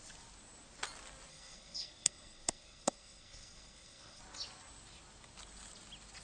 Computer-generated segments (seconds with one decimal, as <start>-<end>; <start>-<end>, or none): 1.3-4.2